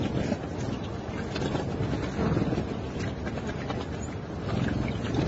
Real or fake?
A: real